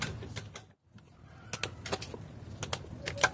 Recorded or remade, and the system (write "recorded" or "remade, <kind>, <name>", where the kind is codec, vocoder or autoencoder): recorded